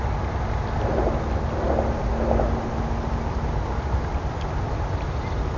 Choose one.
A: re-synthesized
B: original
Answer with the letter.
B